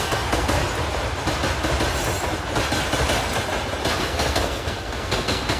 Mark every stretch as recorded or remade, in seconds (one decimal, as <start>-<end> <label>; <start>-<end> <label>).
0.0-0.6 remade; 0.6-4.0 recorded; 4.0-5.6 remade